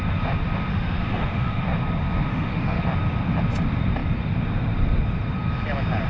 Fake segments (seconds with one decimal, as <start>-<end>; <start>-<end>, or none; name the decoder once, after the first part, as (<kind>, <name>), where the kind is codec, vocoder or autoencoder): 0.7-1.6 (autoencoder, DAC-VAE); 2.3-2.8

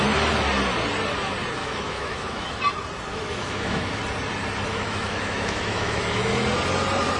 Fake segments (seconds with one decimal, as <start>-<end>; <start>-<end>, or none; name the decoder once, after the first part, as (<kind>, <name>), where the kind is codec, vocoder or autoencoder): 1.6-2.6 (autoencoder, DAC-VAE); 3.1-4.0; 4.7-6.2

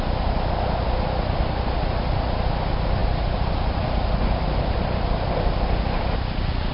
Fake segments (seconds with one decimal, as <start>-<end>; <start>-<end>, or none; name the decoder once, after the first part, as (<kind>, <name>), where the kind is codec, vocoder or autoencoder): none

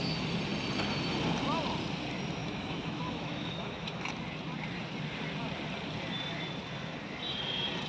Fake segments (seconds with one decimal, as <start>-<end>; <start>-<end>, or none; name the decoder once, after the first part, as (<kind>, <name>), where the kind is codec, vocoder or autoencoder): 2.4-4.1 (autoencoder, DAC-VAE)

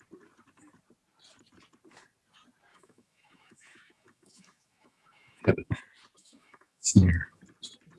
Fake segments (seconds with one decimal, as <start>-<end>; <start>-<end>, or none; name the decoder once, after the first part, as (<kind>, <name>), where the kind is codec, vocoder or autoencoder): 2.7-5.8 (autoencoder, DAC-VAE); 6.2-7.4

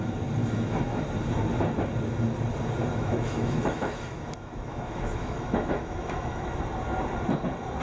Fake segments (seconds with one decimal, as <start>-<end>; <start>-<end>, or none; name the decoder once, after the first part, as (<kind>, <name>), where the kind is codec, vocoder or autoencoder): 0.4-1.0 (autoencoder, DAC-VAE); 2.9-6.6

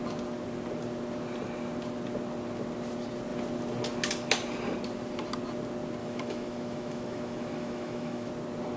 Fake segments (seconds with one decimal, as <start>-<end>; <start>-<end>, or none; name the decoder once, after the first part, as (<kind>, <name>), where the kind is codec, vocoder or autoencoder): 6.0-8.3 (autoencoder, DAC-VAE)